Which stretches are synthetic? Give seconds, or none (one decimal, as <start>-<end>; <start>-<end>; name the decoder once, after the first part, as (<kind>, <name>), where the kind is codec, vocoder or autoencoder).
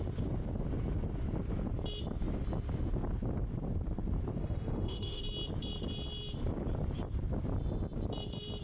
4.4-5.2 (autoencoder, DAC-VAE)